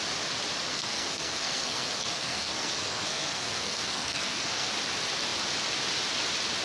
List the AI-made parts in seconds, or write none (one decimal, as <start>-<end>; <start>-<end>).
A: 0.7-4.7